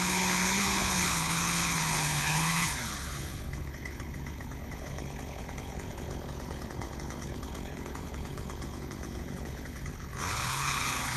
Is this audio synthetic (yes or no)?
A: yes